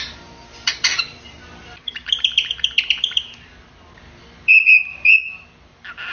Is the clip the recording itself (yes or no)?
yes